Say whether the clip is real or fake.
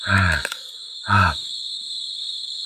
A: fake